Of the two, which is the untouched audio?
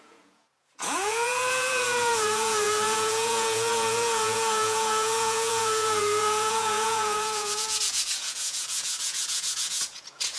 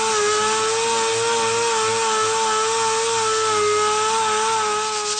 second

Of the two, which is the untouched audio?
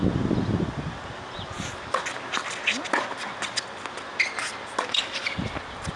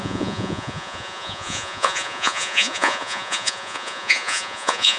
first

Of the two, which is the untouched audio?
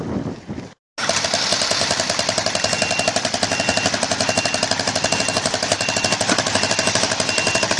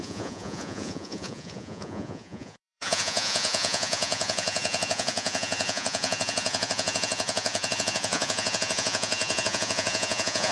first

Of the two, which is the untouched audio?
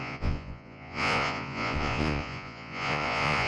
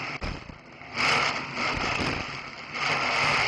second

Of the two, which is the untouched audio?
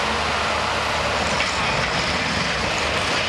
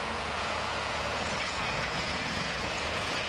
first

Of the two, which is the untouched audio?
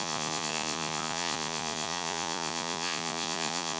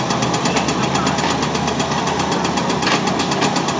second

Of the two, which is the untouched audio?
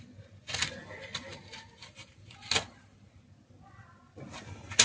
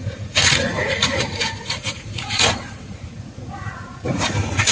first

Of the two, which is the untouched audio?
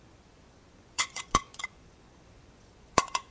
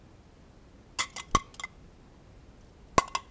second